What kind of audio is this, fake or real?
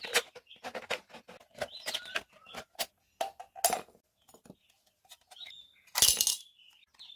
real